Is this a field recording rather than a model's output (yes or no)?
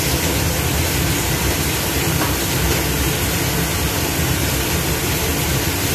no